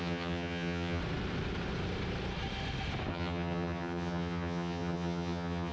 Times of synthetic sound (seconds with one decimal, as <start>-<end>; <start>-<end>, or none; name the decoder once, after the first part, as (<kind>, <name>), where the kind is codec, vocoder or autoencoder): 0.0-1.0 (vocoder, HiFi-GAN); 3.1-5.7